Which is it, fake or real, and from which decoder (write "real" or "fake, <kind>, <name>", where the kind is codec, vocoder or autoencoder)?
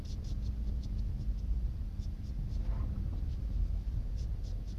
real